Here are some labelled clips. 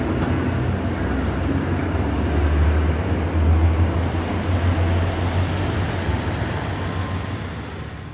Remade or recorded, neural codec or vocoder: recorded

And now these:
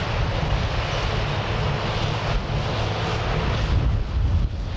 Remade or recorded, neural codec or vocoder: recorded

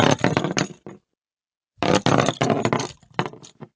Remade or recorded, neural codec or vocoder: recorded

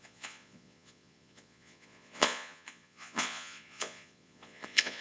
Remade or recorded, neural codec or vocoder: remade, vocoder, Vocos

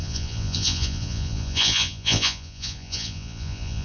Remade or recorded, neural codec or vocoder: remade, vocoder, Vocos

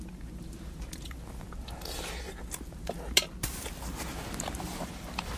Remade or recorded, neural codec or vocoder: recorded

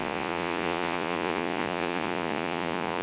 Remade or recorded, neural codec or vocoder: remade, vocoder, Vocos